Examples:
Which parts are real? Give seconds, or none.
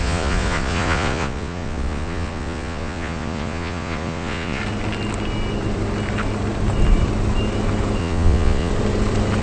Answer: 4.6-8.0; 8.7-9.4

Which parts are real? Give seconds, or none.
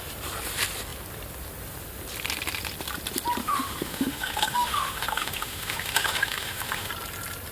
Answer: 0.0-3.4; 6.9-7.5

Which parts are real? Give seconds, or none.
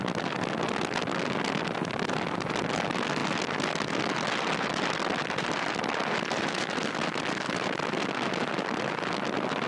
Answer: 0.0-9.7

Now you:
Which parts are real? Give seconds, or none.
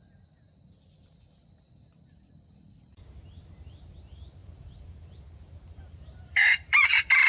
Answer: 0.0-4.4